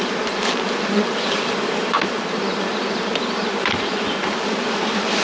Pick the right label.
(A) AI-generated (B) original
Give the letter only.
A